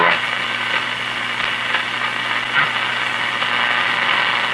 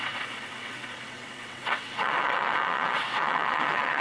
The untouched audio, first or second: first